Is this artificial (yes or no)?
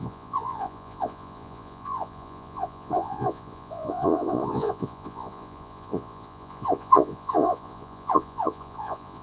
yes